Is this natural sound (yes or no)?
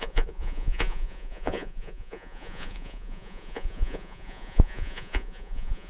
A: no